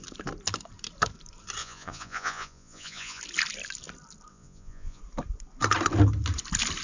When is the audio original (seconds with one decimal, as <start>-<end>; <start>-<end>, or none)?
0.0-1.6; 3.2-4.3; 5.0-6.8